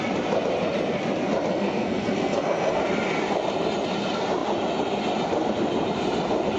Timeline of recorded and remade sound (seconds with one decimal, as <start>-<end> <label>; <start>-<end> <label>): 0.0-1.5 recorded; 1.5-2.8 remade; 2.8-6.6 recorded